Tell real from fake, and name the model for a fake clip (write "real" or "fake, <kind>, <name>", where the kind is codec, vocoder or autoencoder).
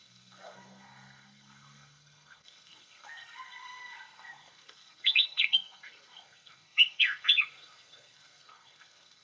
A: fake, codec, SNAC